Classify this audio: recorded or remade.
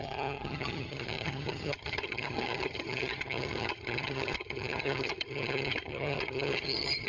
remade